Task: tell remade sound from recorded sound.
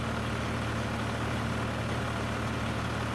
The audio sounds recorded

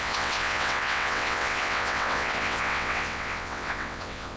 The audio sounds remade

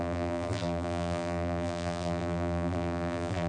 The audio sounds remade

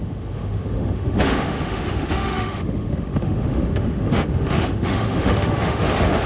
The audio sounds remade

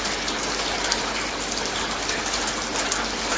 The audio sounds recorded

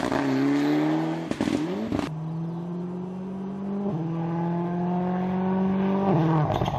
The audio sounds recorded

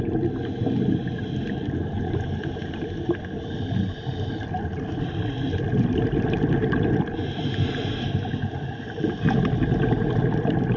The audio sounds recorded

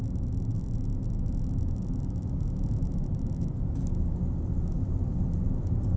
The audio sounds recorded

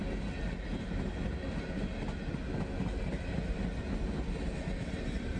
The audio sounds recorded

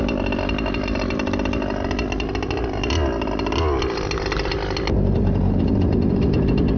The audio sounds recorded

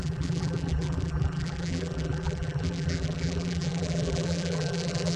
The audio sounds remade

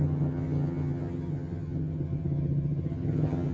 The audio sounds remade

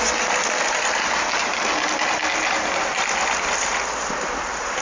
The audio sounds recorded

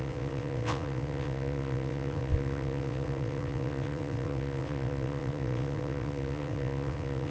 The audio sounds remade